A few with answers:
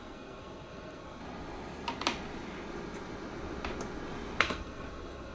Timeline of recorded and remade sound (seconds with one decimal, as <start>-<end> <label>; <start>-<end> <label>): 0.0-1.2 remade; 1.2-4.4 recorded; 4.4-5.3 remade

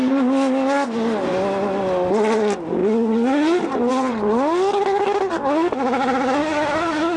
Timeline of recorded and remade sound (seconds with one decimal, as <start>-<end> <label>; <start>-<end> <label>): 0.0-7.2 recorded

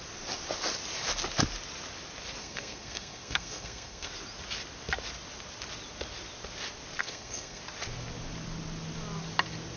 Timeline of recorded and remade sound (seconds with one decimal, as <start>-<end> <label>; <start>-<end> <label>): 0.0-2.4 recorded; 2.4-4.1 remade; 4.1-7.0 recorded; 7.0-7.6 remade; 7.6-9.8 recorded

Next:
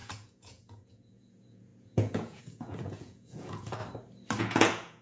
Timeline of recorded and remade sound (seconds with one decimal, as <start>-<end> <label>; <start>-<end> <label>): 0.0-3.8 remade; 3.8-4.4 recorded; 4.4-5.0 remade

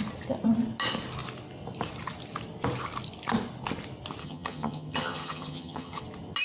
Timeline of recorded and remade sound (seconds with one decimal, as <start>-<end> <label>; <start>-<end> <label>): 0.0-4.2 recorded; 4.2-6.0 remade; 6.0-6.4 recorded